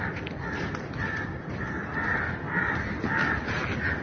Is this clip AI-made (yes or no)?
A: no